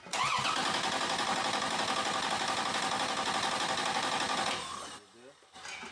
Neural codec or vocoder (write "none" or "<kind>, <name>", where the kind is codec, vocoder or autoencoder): none